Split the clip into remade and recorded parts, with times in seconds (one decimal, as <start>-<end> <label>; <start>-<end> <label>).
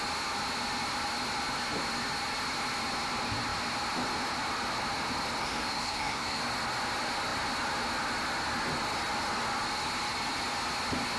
0.0-5.4 recorded; 5.4-6.4 remade; 6.4-11.2 recorded